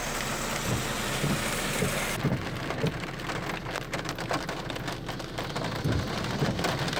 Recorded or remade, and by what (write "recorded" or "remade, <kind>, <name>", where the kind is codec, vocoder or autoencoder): recorded